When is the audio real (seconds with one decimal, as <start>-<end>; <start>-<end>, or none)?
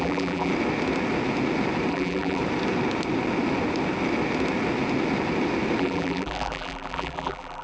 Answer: 0.5-1.9; 2.4-5.8